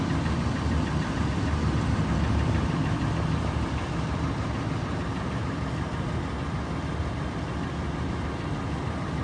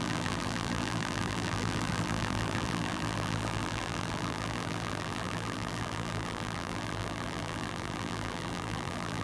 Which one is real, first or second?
first